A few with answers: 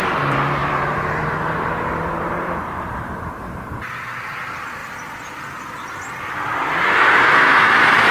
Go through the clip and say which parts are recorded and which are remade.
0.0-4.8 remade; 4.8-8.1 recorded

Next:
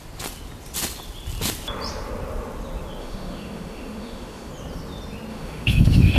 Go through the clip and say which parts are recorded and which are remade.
0.0-3.0 recorded; 3.0-4.5 remade; 4.5-5.3 recorded; 5.3-6.2 remade

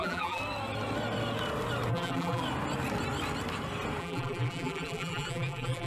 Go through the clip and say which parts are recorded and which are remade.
0.0-0.4 remade; 0.4-1.9 recorded; 1.9-2.4 remade; 2.4-4.0 recorded; 4.0-5.9 remade

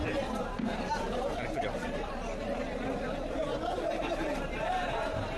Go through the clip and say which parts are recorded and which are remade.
0.0-2.5 remade; 2.5-3.2 recorded; 3.2-5.4 remade

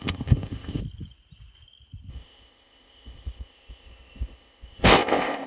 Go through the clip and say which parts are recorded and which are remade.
0.0-0.8 remade; 0.8-2.1 recorded; 2.1-5.5 remade

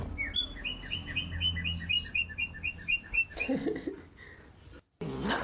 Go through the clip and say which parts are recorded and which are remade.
0.0-5.4 recorded

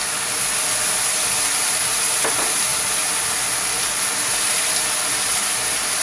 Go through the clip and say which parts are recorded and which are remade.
0.0-2.7 recorded; 2.7-4.1 remade; 4.1-6.0 recorded

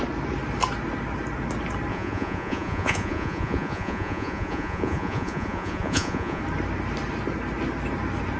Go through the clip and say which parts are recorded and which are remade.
0.0-1.9 recorded; 1.9-6.4 remade; 6.4-8.4 recorded